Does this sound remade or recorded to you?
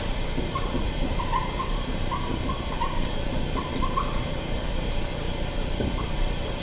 remade